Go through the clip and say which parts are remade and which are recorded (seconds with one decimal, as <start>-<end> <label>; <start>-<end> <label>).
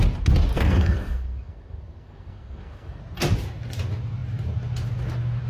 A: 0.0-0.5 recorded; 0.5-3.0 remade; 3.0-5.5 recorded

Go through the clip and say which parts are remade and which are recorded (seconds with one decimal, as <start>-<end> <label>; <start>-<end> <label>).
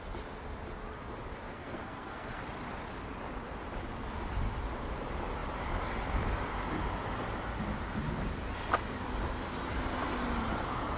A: 0.0-1.5 recorded; 1.5-2.4 remade; 2.4-11.0 recorded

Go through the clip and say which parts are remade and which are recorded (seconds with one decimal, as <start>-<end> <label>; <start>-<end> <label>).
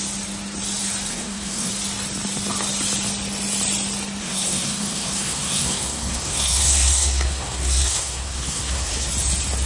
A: 0.0-1.1 recorded; 1.1-1.7 remade; 1.7-4.2 recorded; 4.2-9.1 remade; 9.1-9.7 recorded